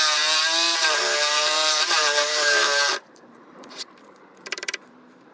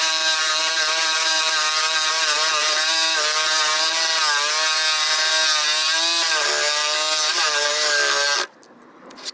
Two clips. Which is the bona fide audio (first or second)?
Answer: second